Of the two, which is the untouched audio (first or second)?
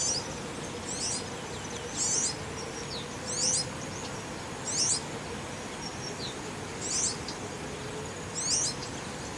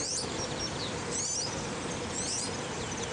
first